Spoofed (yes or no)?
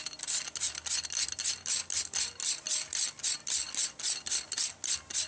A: no